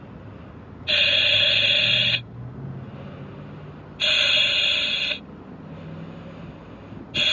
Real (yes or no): yes